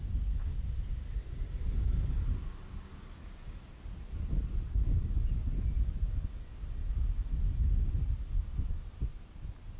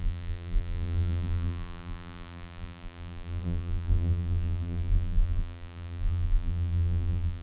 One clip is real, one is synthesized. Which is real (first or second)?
first